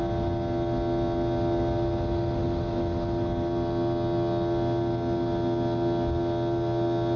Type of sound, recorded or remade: recorded